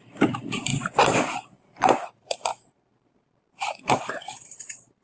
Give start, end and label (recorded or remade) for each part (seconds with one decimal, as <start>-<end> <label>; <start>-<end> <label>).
0.0-0.7 remade; 0.7-2.1 recorded; 2.1-5.0 remade